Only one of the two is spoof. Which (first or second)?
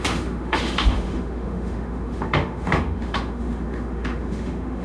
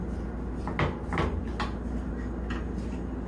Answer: first